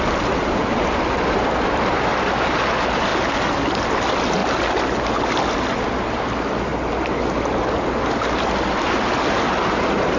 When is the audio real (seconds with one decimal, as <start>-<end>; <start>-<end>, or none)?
0.0-10.2

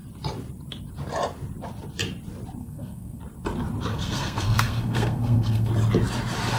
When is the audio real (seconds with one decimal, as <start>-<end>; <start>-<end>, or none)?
0.0-2.6; 3.2-3.9; 5.7-6.6

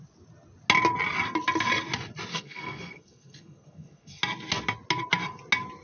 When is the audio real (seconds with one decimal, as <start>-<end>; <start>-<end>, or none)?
0.0-2.3; 4.2-5.8

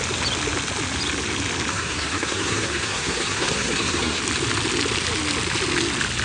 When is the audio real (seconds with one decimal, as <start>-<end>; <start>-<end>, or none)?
0.0-1.7; 4.2-6.2

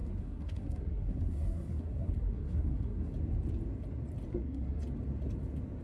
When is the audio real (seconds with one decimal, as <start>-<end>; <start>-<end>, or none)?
3.1-4.3; 4.8-5.8

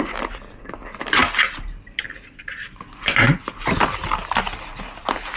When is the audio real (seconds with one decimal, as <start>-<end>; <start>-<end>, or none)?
0.0-5.4

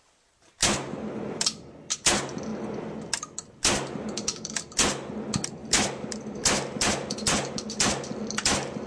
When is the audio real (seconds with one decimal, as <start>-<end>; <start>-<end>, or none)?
0.0-8.9